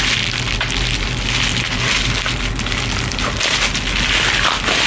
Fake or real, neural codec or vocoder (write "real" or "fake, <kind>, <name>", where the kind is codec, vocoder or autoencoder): real